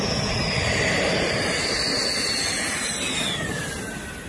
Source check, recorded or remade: recorded